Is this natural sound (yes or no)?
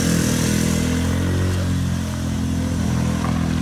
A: yes